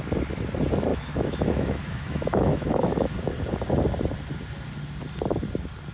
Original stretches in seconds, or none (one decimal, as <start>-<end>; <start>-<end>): 0.0-0.9; 3.3-5.9